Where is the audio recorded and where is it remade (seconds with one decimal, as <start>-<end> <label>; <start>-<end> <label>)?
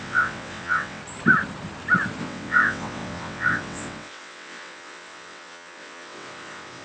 0.0-1.0 remade; 1.0-2.2 recorded; 2.2-6.8 remade